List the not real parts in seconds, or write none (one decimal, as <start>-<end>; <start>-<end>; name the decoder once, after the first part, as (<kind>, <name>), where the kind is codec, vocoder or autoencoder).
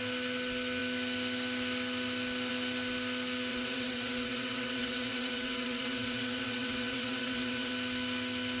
3.5-7.7 (vocoder, WaveNeXt)